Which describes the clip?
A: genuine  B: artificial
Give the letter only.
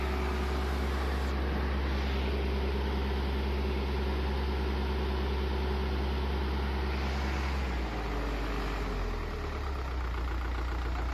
A